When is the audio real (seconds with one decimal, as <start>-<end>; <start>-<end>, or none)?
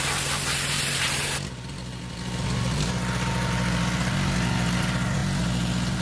0.0-6.0